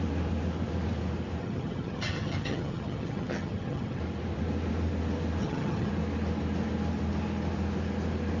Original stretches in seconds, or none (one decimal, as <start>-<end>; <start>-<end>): 0.0-1.4; 4.0-5.4; 5.9-8.4